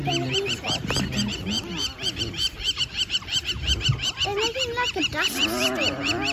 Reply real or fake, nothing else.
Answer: real